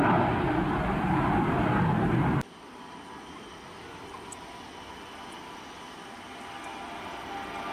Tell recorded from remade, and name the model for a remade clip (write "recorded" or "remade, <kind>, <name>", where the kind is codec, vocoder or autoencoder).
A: recorded